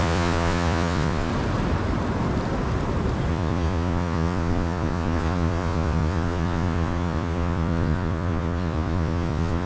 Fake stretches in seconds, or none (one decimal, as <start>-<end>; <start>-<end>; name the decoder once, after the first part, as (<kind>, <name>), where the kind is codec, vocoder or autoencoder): 0.0-1.3 (vocoder, Vocos); 3.3-9.7